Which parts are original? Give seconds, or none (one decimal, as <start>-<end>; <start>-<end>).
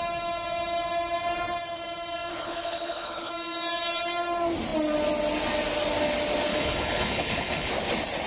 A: 0.0-2.3; 3.3-6.5; 7.7-8.3